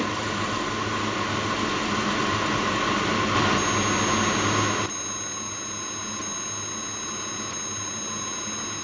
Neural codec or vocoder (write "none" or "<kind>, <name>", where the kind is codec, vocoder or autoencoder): none